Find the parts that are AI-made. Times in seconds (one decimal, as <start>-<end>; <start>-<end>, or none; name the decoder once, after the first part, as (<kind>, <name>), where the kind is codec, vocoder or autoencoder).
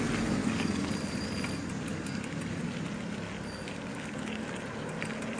0.4-0.9 (codec, DAC); 1.9-2.6; 3.9-4.4